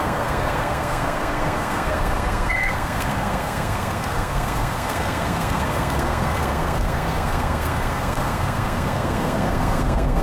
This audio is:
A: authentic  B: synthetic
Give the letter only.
B